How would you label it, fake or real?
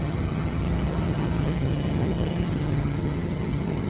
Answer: fake